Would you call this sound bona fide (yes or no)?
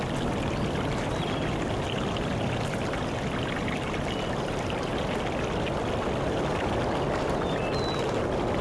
yes